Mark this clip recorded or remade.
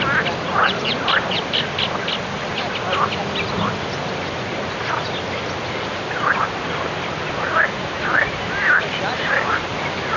recorded